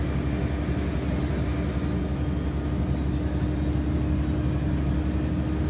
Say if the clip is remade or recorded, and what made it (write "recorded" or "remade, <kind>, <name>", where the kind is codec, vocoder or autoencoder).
recorded